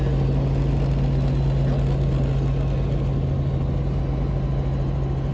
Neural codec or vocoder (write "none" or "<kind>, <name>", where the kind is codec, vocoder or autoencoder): none